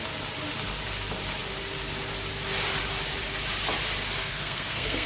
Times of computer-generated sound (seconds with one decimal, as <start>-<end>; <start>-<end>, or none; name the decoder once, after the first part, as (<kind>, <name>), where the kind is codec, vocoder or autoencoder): 4.2-5.1 (codec, SNAC)